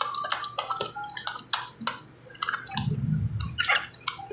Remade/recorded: recorded